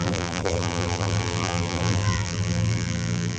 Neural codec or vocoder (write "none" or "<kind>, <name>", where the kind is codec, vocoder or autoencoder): vocoder, BigVGAN v2